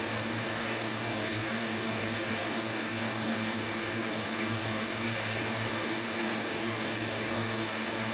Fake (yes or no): yes